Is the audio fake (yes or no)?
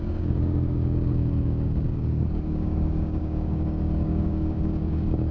yes